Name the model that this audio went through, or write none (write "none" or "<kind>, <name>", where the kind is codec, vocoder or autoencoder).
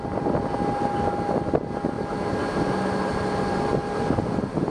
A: none